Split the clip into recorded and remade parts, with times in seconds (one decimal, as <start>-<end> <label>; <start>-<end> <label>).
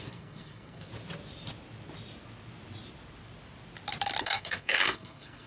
0.0-0.9 remade; 0.9-4.2 recorded; 4.2-5.5 remade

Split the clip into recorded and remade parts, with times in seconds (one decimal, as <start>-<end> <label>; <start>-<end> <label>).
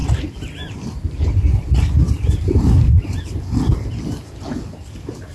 0.0-5.3 remade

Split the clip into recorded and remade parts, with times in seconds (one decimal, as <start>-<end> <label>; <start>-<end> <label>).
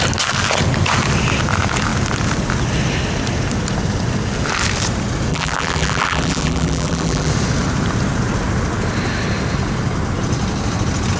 0.0-5.3 recorded; 5.3-7.3 remade; 7.3-11.2 recorded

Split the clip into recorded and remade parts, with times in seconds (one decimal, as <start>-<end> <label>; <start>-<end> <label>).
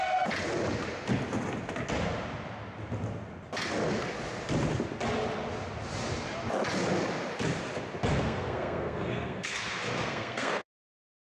0.0-8.1 recorded; 8.1-10.7 remade; 10.7-11.4 recorded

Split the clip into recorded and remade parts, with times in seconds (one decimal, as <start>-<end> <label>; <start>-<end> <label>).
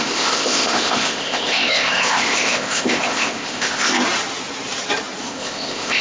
0.0-4.0 remade; 4.0-5.2 recorded; 5.2-6.0 remade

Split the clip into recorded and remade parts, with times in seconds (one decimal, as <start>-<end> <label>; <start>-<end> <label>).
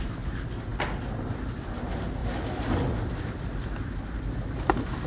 0.0-5.1 recorded